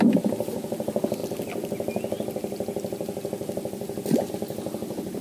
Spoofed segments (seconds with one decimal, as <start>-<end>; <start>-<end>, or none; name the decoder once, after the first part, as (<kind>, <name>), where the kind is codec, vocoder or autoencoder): none